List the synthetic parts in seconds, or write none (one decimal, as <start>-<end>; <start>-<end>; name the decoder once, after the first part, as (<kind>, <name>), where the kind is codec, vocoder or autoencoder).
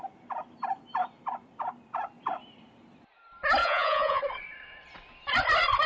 3.6-4.2 (vocoder, Vocos)